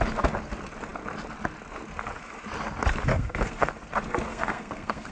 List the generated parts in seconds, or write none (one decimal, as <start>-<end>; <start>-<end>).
3.1-3.7; 4.3-5.1